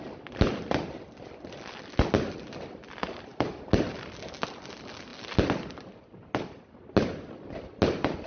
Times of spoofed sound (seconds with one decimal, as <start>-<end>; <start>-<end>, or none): none